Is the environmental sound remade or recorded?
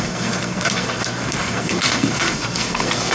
remade